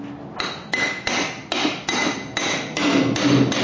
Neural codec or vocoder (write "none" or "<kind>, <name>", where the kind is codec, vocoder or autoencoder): none